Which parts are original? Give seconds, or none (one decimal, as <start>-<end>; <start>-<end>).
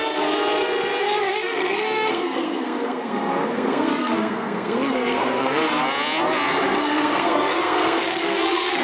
0.0-1.0; 5.6-6.7